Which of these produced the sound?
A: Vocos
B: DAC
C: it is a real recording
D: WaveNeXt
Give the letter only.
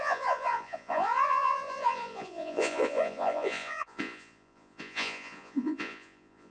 A